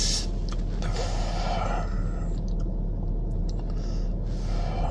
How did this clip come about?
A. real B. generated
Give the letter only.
A